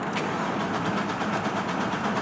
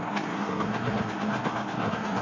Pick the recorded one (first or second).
first